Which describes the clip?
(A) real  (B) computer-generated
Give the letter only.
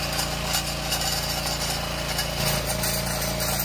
A